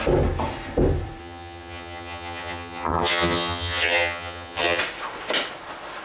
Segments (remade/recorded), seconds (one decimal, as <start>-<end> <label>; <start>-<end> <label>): 0.0-1.2 recorded; 1.2-4.8 remade; 4.8-6.0 recorded